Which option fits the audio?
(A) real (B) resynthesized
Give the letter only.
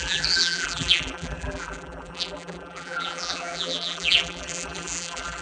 B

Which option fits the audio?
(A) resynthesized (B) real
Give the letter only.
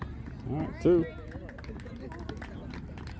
B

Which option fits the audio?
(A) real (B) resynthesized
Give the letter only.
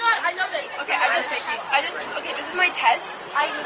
B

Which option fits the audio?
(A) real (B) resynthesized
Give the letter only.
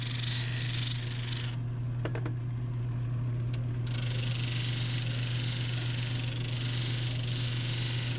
A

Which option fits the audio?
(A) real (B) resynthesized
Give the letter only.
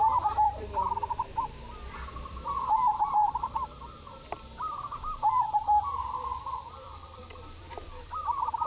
B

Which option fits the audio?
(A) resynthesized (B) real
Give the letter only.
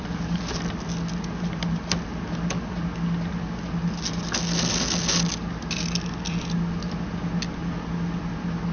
B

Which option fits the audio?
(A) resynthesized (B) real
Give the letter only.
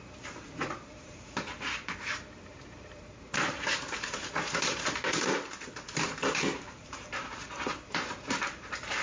A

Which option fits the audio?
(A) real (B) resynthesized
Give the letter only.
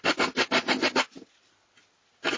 A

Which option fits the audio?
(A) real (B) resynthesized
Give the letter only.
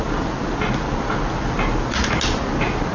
A